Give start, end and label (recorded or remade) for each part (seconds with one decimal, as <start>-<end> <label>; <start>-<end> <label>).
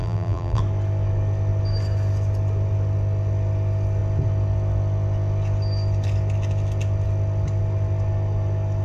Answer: 0.0-0.6 remade; 0.6-8.8 recorded